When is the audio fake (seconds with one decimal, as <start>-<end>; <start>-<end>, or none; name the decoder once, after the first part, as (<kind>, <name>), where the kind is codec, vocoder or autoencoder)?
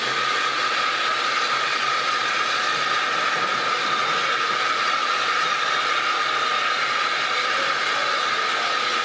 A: 5.0-7.9 (vocoder, BigVGAN v2)